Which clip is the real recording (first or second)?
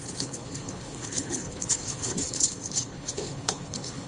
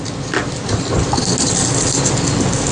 second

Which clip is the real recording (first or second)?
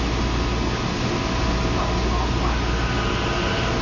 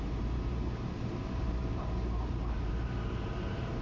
first